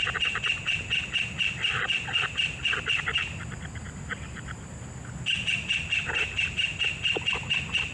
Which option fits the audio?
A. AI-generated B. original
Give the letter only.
B